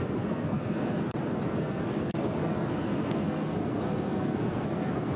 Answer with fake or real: fake